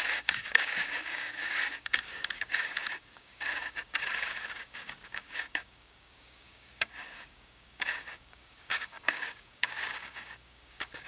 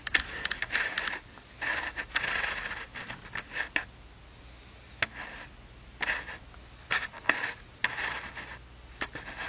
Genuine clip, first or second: second